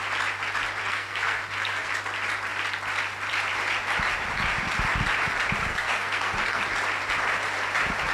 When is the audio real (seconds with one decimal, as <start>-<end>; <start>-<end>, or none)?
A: 0.0-0.8; 1.9-5.7; 6.6-8.1

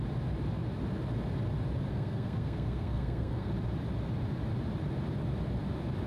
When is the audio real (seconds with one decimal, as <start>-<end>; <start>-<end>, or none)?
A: 0.0-1.9; 3.5-6.1

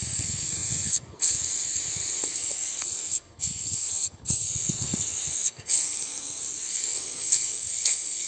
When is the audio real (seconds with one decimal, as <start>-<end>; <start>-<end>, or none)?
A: none

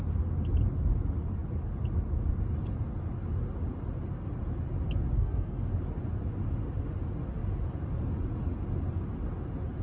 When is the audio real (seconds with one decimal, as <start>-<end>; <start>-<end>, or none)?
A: 0.0-5.2; 5.7-9.8

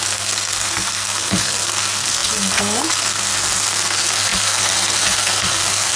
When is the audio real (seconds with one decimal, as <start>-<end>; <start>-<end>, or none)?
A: none